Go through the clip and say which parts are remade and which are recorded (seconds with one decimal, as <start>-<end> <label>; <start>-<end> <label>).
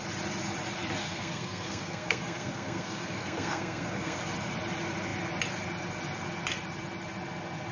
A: 0.0-1.0 recorded; 1.0-4.2 remade; 4.2-7.7 recorded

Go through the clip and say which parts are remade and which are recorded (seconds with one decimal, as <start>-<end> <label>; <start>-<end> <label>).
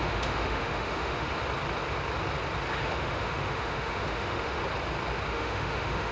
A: 0.0-1.3 remade; 1.3-2.8 recorded; 2.8-4.6 remade; 4.6-5.3 recorded; 5.3-6.1 remade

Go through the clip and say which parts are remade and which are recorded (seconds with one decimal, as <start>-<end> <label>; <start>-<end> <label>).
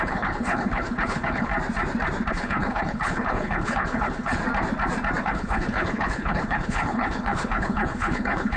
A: 0.0-1.5 remade; 1.5-2.3 recorded; 2.3-4.4 remade; 4.4-5.2 recorded; 5.2-8.6 remade